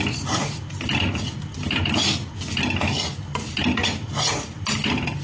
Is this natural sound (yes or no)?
yes